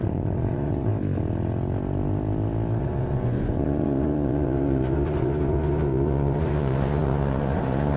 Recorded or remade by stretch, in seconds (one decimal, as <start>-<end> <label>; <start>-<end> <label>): 0.0-0.9 remade; 0.9-2.8 recorded; 2.8-8.0 remade